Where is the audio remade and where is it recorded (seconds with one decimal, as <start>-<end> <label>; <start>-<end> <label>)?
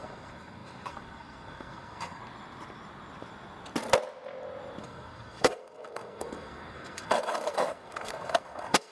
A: 0.0-2.2 remade; 2.2-4.8 recorded; 4.8-8.9 remade